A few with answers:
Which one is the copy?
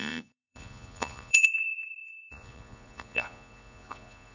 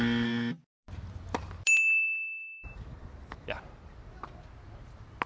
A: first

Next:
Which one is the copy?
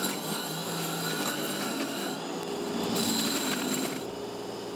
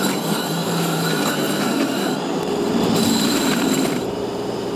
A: second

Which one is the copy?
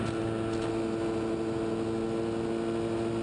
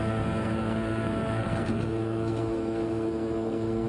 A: second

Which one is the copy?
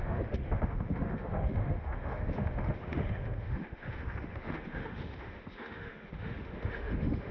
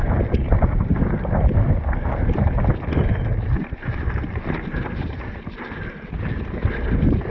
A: first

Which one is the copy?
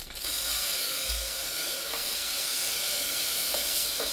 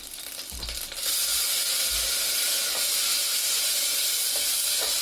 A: first